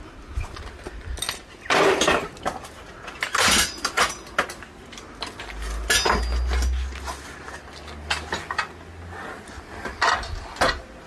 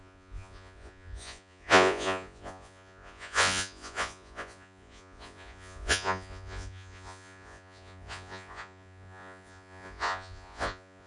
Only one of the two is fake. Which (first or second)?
second